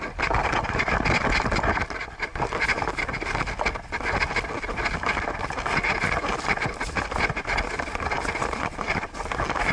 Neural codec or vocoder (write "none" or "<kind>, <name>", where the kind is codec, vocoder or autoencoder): none